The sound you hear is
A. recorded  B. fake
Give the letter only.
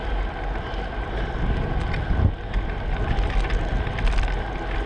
A